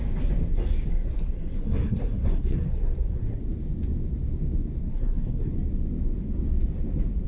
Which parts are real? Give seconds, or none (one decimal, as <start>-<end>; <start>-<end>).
0.0-0.9; 3.4-4.8; 5.5-7.3